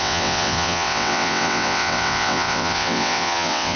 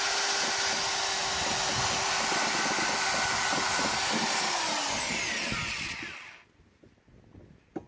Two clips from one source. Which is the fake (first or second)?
first